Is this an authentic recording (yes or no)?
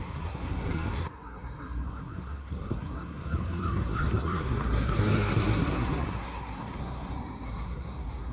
no